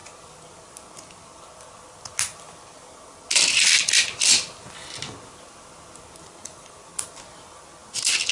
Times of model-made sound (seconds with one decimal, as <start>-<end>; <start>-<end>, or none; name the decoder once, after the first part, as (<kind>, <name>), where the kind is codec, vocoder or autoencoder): none